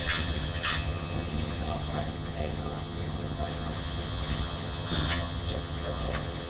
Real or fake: fake